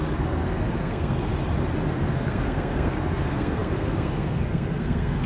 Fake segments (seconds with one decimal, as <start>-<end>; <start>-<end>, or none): 0.0-1.3; 1.9-5.3